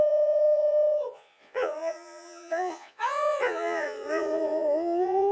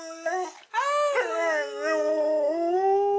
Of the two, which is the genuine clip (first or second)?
second